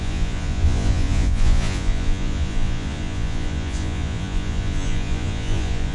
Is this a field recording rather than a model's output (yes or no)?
no